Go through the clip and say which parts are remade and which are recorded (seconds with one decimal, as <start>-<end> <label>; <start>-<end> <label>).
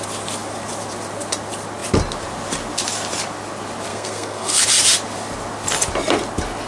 0.0-3.9 recorded; 3.9-4.6 remade; 4.6-6.7 recorded